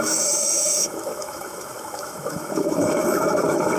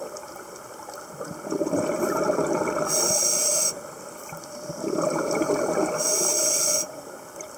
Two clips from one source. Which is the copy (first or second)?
first